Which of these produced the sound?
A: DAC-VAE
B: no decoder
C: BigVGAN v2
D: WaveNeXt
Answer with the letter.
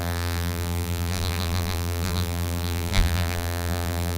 C